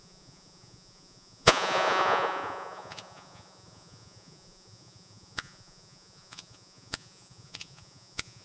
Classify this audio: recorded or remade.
remade